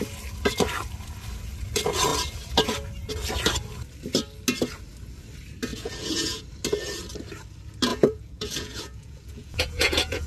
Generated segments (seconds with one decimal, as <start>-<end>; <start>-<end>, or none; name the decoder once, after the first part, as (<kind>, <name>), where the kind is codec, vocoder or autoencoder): 5.7-6.4 (vocoder, Vocos); 7.9-10.3